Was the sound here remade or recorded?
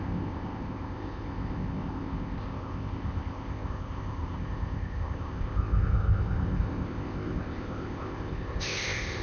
remade